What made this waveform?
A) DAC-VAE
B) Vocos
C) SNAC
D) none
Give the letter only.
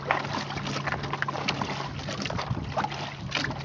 D